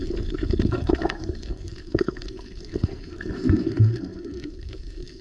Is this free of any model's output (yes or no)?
no